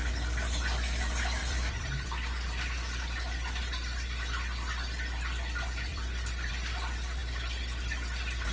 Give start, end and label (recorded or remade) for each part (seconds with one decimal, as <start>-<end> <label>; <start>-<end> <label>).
0.0-1.4 recorded; 1.4-3.6 remade; 3.6-5.9 recorded; 5.9-6.5 remade; 6.5-8.5 recorded